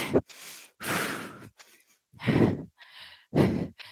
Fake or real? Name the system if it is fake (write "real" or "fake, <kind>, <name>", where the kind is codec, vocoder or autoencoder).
real